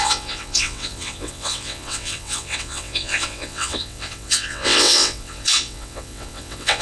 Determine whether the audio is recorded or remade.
remade